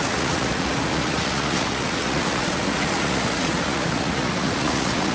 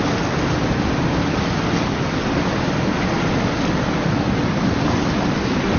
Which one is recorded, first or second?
second